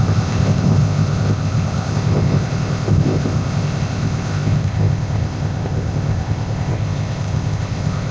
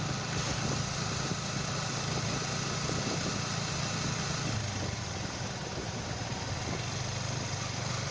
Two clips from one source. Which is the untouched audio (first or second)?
second